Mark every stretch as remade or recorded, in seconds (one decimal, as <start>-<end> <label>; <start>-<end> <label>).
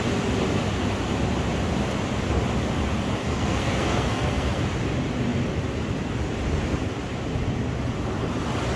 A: 0.0-3.2 recorded; 3.2-4.6 remade; 4.6-8.8 recorded